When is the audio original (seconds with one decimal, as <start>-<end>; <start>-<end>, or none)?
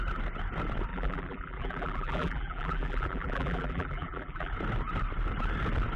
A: 0.0-0.9; 4.5-6.0